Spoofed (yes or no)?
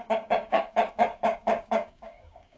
yes